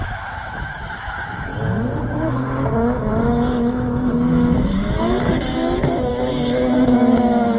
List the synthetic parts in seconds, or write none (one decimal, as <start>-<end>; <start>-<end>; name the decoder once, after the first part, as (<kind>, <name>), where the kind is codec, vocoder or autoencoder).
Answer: 0.0-7.6 (autoencoder, DAC-VAE)